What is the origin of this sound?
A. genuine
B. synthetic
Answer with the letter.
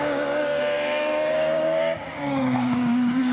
B